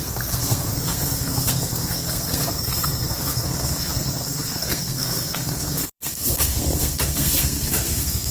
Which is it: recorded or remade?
remade